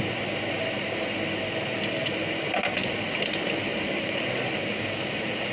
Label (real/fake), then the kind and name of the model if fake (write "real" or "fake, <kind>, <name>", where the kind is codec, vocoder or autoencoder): real